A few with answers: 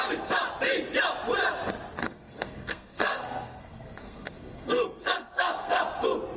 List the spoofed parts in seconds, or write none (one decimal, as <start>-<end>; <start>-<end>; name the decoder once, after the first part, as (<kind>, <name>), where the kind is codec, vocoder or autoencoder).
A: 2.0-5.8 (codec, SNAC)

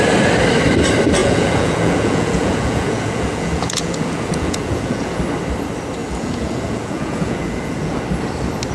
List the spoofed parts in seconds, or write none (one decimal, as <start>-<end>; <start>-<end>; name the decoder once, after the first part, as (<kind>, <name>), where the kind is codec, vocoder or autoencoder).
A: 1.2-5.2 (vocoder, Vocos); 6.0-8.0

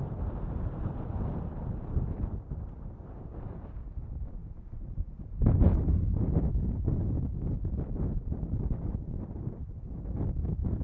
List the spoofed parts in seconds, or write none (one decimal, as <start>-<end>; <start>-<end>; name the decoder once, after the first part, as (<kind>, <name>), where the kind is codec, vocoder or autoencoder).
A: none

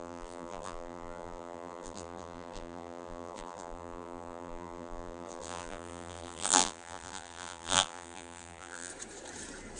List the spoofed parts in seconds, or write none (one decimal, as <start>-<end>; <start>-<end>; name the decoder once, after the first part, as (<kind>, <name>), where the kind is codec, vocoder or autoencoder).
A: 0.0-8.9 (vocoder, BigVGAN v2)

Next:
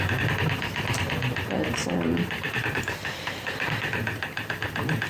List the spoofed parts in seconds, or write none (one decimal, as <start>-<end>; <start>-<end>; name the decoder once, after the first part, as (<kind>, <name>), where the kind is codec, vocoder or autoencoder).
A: 1.8-3.9 (vocoder, BigVGAN v2)